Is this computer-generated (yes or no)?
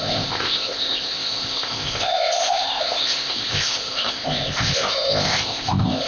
yes